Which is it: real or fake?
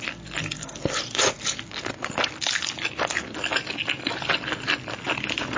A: real